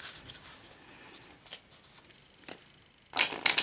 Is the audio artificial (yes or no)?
no